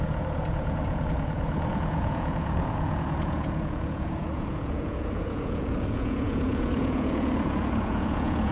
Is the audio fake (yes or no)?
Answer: yes